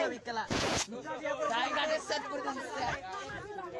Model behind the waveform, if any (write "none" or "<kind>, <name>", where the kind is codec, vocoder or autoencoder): vocoder, Vocos